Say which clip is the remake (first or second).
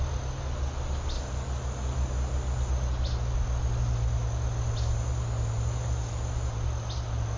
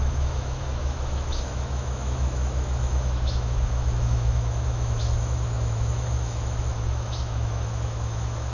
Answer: second